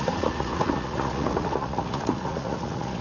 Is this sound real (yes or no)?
no